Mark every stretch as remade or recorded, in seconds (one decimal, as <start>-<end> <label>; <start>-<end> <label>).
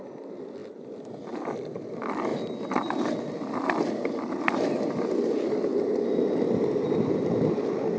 0.0-8.0 recorded